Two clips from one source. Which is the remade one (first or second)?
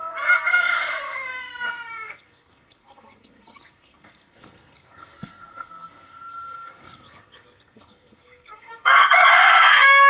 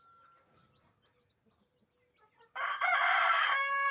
first